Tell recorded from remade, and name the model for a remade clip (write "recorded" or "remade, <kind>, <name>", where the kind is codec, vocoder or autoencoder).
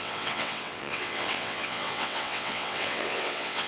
remade, vocoder, WaveNeXt